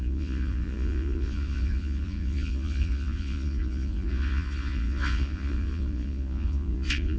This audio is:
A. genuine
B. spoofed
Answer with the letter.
B